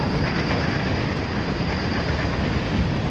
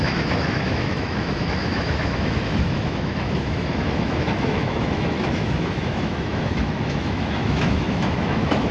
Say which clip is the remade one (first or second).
second